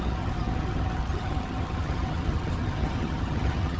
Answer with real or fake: fake